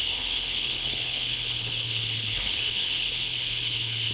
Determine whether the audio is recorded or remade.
remade